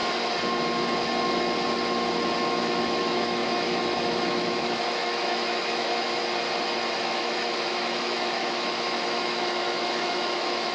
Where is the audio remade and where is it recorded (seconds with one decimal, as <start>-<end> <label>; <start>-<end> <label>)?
0.0-2.4 recorded; 2.4-6.2 remade; 6.2-7.0 recorded; 7.0-10.7 remade